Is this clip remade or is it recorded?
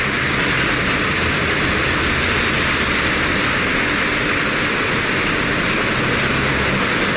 recorded